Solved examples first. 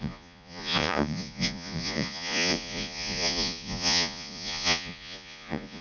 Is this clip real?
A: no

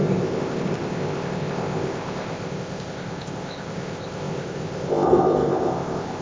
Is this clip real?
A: no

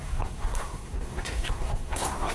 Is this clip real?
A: no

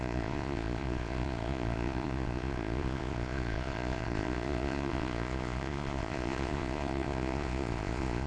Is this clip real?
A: no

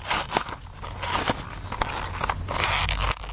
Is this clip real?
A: yes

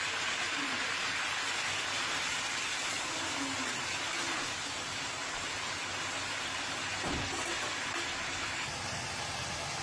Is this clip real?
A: yes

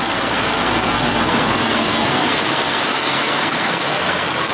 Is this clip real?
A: no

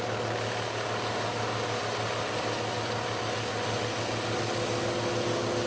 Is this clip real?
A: yes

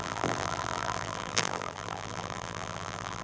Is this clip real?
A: no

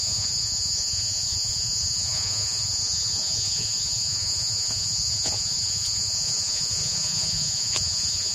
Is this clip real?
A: no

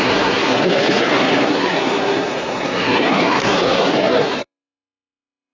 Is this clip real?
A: no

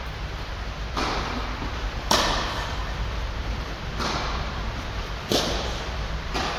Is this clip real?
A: no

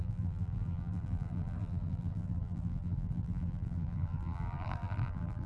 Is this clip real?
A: no